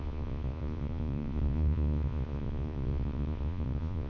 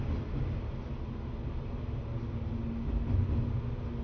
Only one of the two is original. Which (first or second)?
second